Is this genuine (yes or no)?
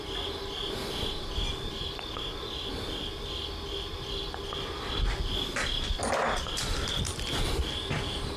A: yes